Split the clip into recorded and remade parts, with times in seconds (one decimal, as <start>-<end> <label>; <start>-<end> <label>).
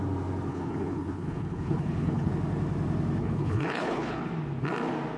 0.0-0.5 recorded; 0.5-2.3 remade; 2.3-3.2 recorded; 3.2-4.3 remade; 4.3-5.2 recorded